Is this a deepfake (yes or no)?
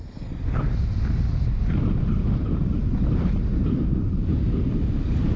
no